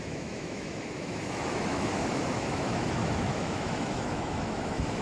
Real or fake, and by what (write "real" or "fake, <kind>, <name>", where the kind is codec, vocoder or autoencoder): fake, autoencoder, DAC-VAE